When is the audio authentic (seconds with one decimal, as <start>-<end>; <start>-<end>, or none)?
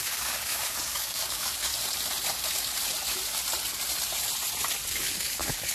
1.7-4.9